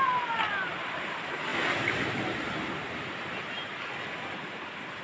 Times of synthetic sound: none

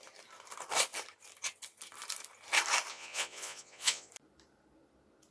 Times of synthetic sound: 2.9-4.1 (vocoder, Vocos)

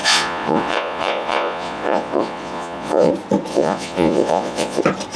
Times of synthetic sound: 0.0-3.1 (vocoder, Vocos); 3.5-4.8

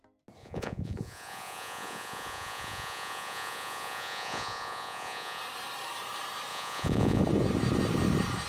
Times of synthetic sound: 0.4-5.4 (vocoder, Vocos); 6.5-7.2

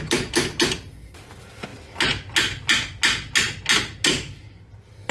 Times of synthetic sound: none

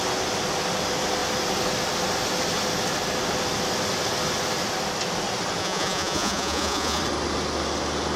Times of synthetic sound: 5.6-7.0 (vocoder, Vocos)

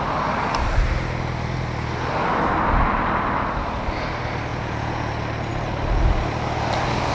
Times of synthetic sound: 4.5-5.1 (vocoder, Vocos)